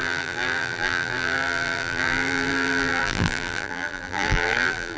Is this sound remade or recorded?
remade